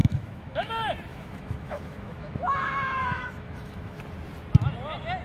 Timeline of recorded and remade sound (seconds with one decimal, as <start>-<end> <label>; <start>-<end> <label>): 0.0-0.7 remade; 0.7-1.1 recorded; 1.1-4.0 remade; 4.0-5.2 recorded